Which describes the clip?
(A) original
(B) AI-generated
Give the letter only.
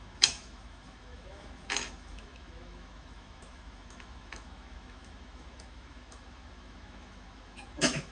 B